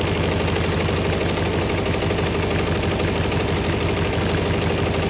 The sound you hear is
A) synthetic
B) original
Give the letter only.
B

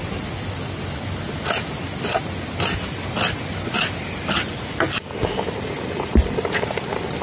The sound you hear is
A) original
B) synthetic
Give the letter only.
A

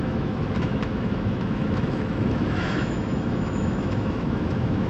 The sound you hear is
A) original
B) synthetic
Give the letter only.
B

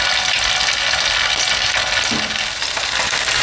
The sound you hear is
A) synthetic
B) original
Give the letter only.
B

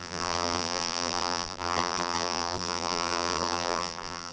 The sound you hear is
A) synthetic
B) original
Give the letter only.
A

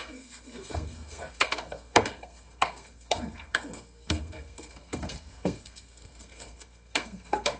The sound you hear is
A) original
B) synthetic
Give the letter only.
B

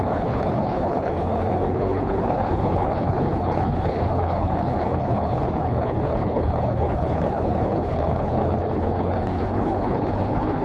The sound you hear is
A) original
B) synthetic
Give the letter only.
B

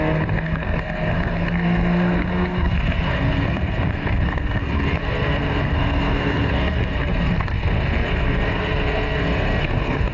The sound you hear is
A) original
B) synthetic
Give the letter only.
B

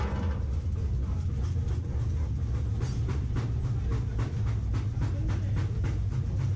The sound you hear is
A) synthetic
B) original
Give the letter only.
B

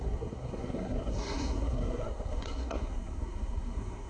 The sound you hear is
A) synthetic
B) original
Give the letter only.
A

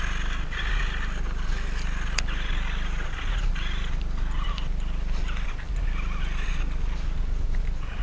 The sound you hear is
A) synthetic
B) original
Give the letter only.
B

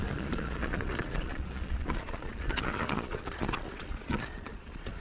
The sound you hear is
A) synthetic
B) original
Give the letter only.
A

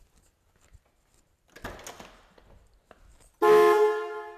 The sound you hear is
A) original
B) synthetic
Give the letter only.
A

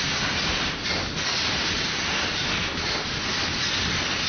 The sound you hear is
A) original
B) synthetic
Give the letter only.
A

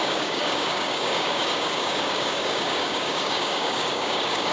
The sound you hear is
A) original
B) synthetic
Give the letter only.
B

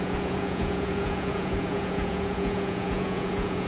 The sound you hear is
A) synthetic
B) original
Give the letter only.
A